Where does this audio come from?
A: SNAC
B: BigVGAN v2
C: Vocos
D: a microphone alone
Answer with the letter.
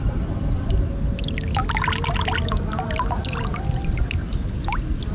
D